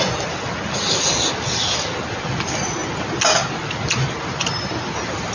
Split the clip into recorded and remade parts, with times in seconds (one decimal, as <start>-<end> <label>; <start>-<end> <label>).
0.0-5.3 recorded